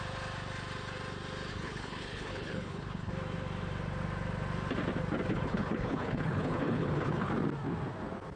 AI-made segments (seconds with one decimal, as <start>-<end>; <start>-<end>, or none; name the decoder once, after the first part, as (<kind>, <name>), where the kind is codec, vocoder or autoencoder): 1.5-3.1 (codec, HILCodec); 5.3-7.3